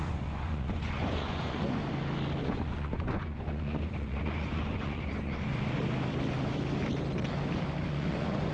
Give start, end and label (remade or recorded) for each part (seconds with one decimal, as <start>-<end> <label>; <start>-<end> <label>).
0.0-1.8 remade; 1.8-2.4 recorded; 2.4-5.5 remade; 5.5-7.9 recorded; 7.9-8.5 remade